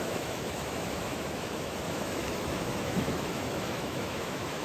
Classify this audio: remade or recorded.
remade